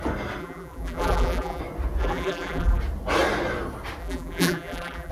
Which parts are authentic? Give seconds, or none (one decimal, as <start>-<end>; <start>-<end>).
0.0-0.4; 1.6-2.0; 2.8-4.0